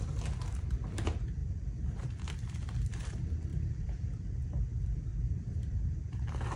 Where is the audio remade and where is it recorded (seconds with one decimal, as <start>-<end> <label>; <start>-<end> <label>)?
0.0-1.4 recorded; 1.4-2.0 remade; 2.0-3.5 recorded; 3.5-5.2 remade; 5.2-6.6 recorded